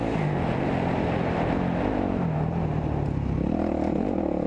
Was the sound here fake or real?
real